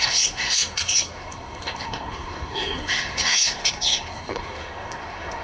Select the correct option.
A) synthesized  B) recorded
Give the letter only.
A